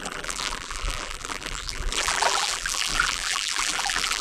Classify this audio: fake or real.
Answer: fake